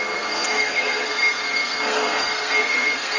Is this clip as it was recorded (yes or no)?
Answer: no